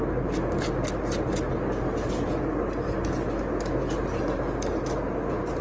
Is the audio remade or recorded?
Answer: recorded